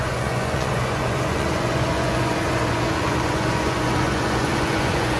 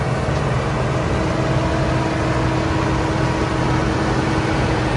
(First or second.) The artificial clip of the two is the first